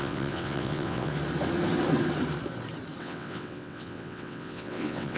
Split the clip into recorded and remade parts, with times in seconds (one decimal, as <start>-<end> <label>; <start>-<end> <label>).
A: 0.0-1.1 remade; 1.1-3.0 recorded; 3.0-5.2 remade